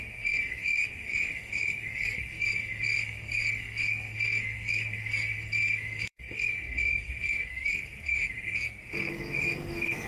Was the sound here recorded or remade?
remade